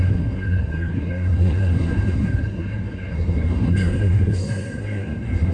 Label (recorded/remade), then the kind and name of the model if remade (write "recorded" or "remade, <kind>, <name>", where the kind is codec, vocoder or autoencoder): remade, codec, SNAC